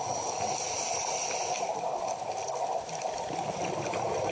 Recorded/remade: recorded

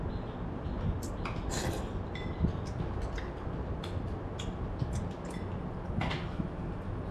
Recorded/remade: recorded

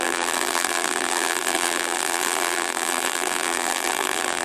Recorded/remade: remade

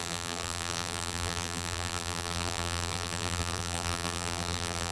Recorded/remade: remade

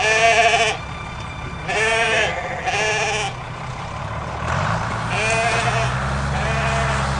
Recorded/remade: recorded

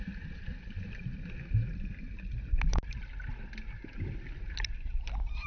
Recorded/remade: recorded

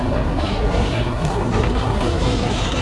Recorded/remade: remade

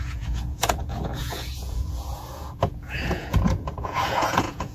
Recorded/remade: remade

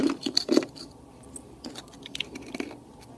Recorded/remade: recorded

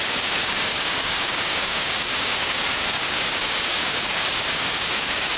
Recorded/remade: remade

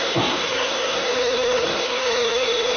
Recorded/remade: remade